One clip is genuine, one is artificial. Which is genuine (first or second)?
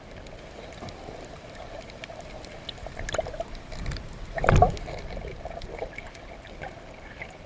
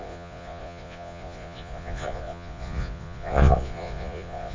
first